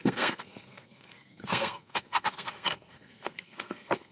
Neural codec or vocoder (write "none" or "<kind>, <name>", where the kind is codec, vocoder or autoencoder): codec, SNAC